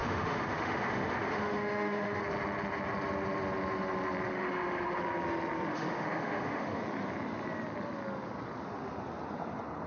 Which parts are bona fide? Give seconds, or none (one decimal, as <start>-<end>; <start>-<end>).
2.2-4.3; 5.0-5.7; 6.8-9.9